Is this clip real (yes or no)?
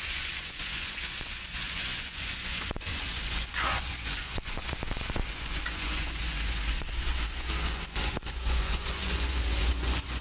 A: no